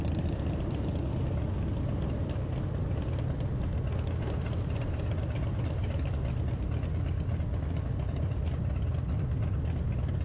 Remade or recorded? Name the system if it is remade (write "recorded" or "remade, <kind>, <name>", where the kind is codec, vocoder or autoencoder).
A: recorded